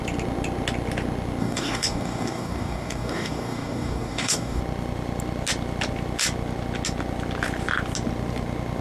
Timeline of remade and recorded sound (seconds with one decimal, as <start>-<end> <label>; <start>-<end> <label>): 0.0-1.4 recorded; 1.4-4.6 remade; 4.6-8.8 recorded